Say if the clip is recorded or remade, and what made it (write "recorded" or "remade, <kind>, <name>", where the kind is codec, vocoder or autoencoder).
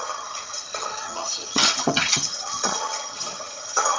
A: remade, vocoder, HiFi-GAN